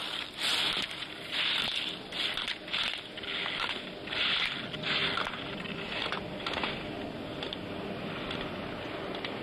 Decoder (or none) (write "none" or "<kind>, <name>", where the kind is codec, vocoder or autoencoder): none